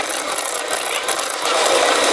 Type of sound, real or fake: real